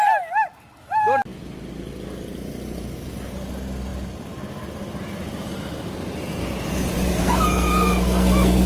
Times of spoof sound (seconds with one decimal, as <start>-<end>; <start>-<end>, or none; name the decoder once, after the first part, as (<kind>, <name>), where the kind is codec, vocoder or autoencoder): 7.1-8.7 (codec, SNAC)